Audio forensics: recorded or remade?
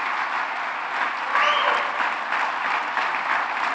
recorded